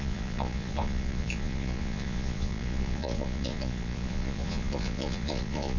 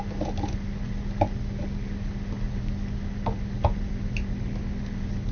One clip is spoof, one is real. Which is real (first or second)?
second